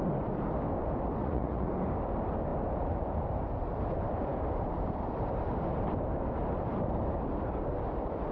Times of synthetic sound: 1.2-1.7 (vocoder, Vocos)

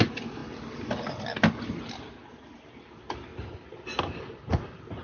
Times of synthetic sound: none

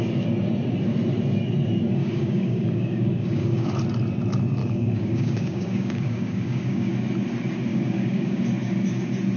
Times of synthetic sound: 2.0-3.7 (codec, DAC); 4.6-6.9; 7.7-8.4

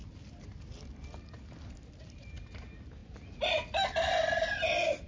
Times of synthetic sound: none

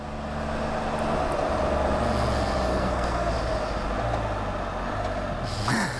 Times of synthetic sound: 2.7-3.3 (codec, SNAC)